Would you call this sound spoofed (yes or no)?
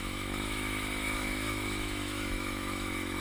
yes